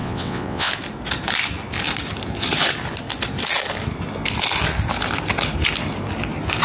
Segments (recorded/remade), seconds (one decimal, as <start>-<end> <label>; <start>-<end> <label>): 0.0-0.7 remade; 0.7-6.6 recorded